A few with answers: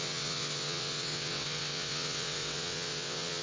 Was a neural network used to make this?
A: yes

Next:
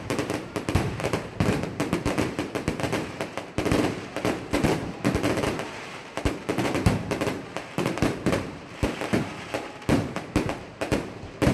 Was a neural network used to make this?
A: yes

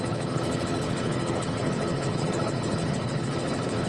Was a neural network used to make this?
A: yes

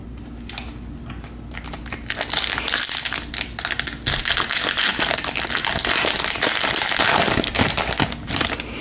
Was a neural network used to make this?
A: no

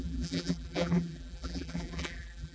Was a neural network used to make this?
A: yes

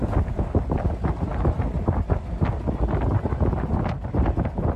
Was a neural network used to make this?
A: no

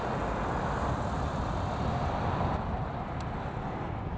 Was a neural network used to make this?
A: no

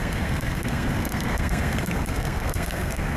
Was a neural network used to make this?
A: yes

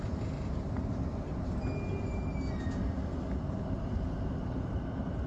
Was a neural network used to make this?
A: no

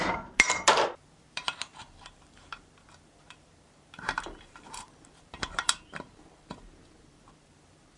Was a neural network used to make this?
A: yes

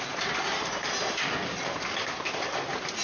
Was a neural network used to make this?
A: no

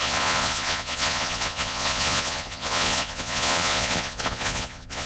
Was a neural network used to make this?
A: yes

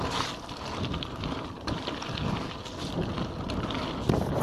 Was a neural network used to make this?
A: no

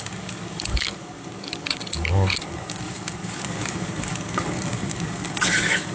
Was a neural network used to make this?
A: yes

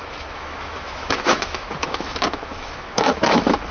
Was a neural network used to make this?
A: yes